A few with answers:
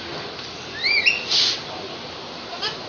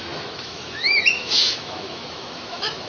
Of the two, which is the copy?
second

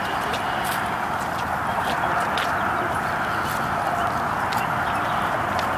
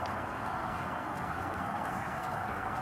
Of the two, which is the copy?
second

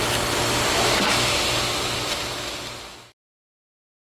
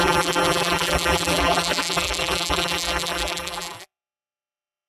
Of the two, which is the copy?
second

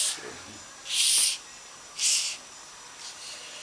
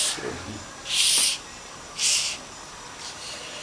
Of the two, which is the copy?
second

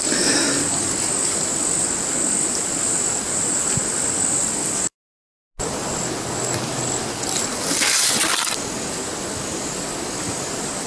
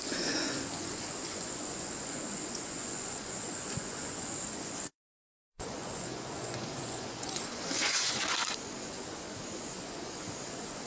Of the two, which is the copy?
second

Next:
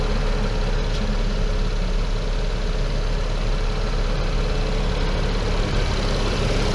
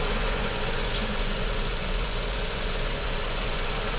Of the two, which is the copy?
second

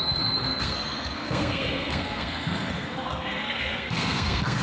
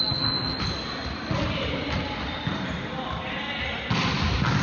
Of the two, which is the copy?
first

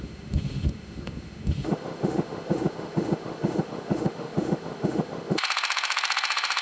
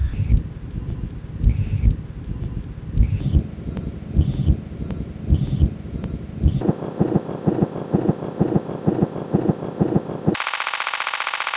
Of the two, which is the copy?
first